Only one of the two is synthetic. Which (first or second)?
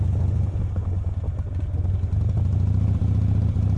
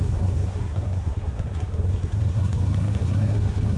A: second